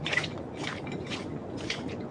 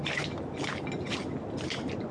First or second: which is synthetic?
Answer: first